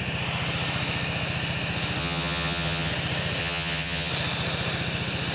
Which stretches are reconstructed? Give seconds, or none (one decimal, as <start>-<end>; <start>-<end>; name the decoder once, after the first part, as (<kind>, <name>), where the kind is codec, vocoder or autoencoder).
2.0-2.9 (vocoder, HiFi-GAN); 3.4-4.1